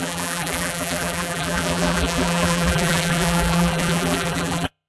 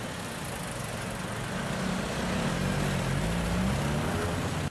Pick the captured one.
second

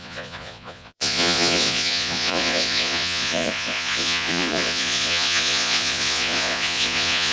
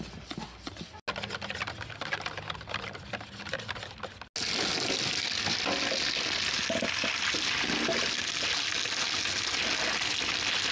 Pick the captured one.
second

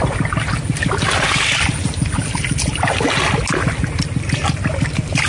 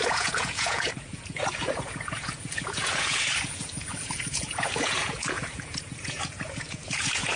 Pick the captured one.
first